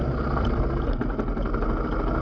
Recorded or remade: recorded